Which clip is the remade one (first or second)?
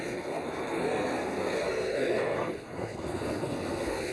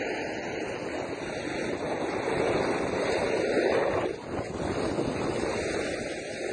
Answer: first